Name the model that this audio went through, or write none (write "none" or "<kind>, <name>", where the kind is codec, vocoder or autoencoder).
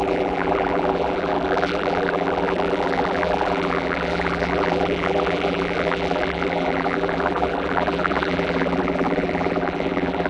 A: vocoder, BigVGAN v2